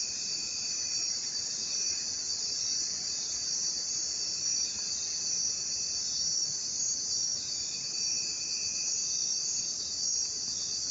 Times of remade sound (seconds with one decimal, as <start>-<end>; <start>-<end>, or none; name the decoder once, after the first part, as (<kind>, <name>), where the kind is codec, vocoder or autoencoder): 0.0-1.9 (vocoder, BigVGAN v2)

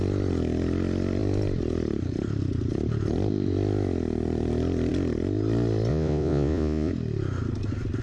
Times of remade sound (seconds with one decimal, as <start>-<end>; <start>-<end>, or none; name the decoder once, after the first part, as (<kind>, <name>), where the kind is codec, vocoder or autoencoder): 5.9-6.9 (vocoder, Vocos)

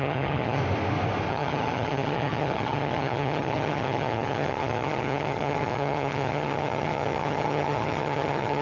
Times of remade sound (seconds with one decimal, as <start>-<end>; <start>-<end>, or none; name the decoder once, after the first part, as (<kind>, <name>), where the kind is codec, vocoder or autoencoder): 0.0-0.6 (vocoder, HiFi-GAN); 1.3-8.6

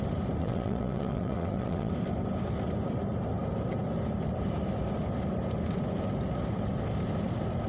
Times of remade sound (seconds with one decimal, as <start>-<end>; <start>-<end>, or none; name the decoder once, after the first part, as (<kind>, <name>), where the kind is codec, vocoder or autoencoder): 0.4-1.9 (vocoder, WaveNeXt)

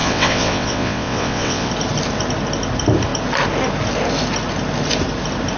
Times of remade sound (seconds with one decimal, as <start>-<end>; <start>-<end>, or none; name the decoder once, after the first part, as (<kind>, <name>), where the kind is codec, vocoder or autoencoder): 0.0-1.7 (vocoder, WaveNeXt)

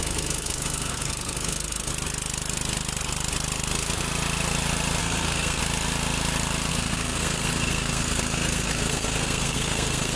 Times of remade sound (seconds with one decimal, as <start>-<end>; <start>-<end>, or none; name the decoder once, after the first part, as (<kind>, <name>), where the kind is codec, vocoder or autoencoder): 0.0-1.9 (codec, SNAC); 5.0-5.6; 6.7-10.2

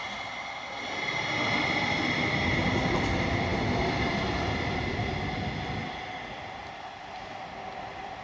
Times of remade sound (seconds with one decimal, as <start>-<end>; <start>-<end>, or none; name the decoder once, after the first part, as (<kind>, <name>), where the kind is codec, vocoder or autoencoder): none

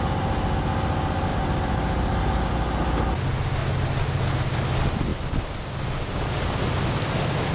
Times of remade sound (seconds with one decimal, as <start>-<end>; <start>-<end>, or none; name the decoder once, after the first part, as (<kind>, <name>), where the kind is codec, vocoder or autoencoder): 1.3-2.5 (vocoder, BigVGAN v2); 3.6-4.2